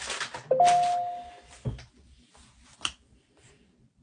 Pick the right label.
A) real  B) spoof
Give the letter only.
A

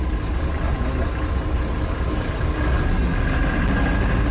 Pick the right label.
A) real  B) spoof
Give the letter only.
A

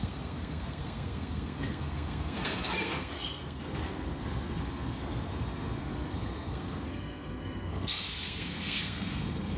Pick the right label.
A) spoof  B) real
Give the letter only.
A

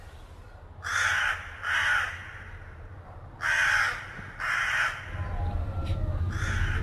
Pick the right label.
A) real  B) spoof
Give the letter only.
A